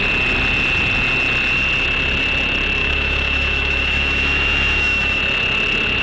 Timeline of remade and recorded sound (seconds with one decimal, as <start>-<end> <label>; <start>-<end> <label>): 0.0-2.8 recorded; 2.8-5.2 remade; 5.2-6.0 recorded